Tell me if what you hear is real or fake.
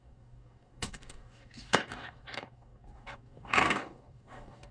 fake